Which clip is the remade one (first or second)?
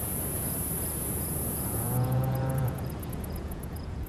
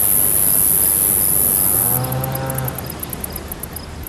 first